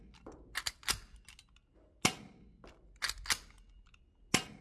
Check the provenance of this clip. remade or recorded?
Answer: recorded